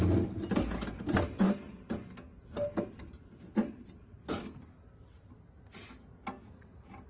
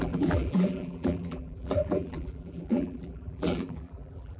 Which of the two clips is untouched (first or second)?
first